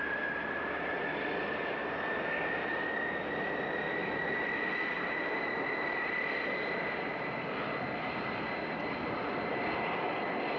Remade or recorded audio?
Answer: recorded